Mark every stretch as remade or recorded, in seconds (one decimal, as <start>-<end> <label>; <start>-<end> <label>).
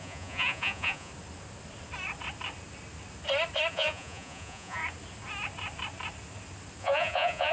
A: 0.0-1.1 remade; 1.1-3.7 recorded; 3.7-4.8 remade; 4.8-6.8 recorded; 6.8-7.5 remade